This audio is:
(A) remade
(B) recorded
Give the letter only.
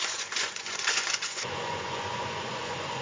A